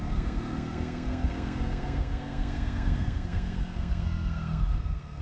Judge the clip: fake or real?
fake